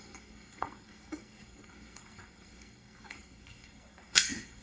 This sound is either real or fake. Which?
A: fake